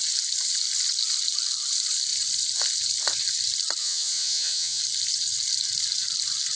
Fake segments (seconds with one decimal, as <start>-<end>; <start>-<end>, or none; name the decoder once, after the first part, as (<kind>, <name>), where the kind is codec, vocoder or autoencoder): 3.8-4.8 (vocoder, Vocos)